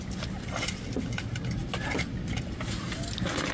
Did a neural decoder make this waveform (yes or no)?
no